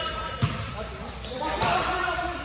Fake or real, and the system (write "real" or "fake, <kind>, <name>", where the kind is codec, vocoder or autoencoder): fake, vocoder, BigVGAN v2